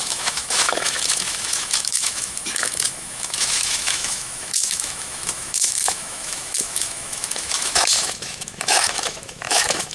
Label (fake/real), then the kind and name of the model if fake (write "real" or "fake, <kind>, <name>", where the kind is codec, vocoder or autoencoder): fake, autoencoder, DAC-VAE